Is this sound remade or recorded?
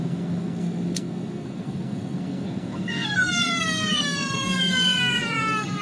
remade